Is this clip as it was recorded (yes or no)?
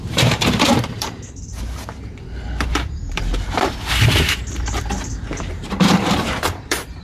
no